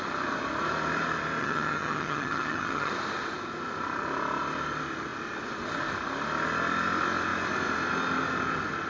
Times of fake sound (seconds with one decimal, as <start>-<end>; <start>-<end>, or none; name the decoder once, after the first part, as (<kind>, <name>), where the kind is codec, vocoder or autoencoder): 1.4-2.9 (vocoder, HiFi-GAN)